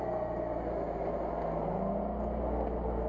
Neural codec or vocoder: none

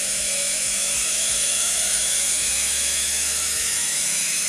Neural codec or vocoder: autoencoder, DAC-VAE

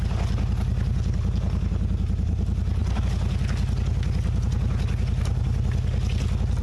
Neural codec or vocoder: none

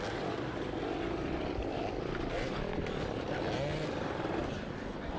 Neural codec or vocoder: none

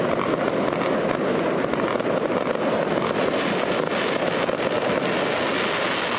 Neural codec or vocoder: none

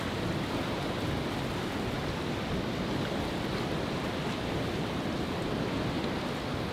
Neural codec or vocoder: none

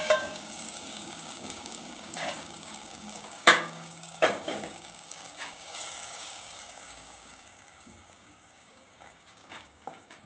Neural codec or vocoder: codec, DAC